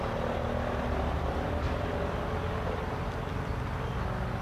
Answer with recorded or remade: recorded